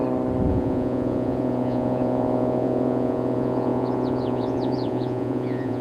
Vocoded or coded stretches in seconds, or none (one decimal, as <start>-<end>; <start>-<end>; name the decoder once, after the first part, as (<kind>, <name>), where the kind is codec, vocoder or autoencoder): 0.5-5.8 (vocoder, Vocos)